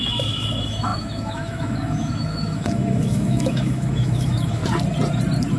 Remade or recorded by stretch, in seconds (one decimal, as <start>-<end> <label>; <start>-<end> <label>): 0.0-4.6 remade; 4.6-5.6 recorded